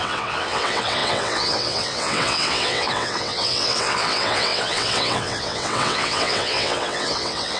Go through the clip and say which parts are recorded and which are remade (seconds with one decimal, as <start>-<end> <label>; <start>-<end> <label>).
0.0-7.6 remade

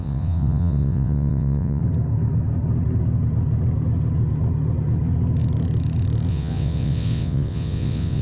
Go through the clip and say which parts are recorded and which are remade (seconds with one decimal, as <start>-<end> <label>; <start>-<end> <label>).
0.0-1.8 remade; 1.8-6.3 recorded; 6.3-8.2 remade